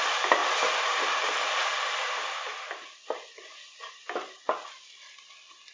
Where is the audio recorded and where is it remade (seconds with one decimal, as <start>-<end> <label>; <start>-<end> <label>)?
0.0-0.4 remade; 0.4-3.8 recorded; 3.8-5.7 remade